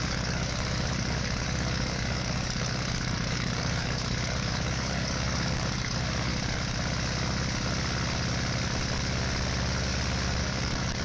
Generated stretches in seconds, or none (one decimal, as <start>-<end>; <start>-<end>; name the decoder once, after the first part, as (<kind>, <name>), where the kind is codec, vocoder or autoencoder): 0.0-6.3 (codec, DAC); 10.4-11.0